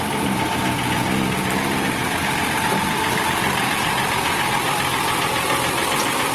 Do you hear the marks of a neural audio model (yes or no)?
yes